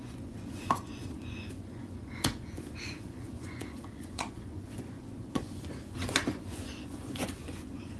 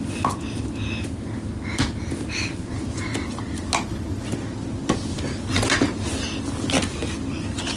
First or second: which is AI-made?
first